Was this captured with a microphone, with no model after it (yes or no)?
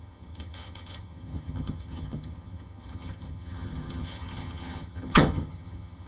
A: no